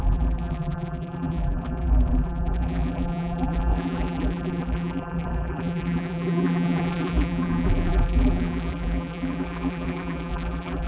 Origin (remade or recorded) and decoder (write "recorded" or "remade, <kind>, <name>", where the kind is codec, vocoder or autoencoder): remade, vocoder, BigVGAN v2